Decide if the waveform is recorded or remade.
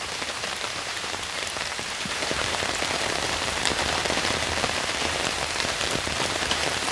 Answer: remade